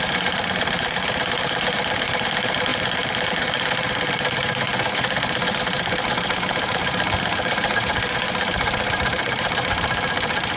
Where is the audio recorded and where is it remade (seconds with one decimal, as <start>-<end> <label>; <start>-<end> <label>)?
0.0-10.6 remade